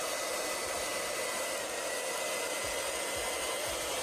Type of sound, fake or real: real